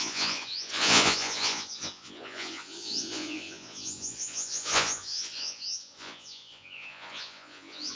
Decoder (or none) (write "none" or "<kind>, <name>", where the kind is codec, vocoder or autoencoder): vocoder, Vocos